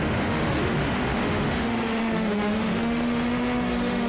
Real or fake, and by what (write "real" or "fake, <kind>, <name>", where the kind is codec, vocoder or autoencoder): fake, autoencoder, DAC-VAE